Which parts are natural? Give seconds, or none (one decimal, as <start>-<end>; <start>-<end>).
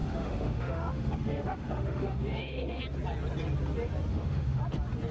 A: 2.8-4.1; 4.6-5.1